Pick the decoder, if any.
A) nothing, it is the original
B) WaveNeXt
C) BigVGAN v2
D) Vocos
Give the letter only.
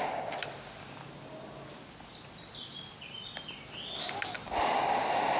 A